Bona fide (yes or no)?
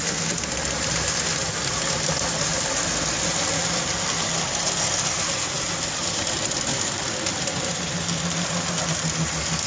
yes